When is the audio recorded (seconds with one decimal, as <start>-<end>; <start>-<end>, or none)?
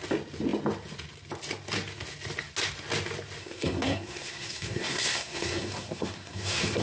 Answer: 0.0-3.4